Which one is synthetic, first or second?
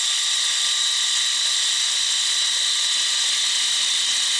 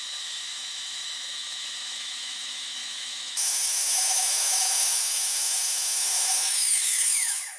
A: second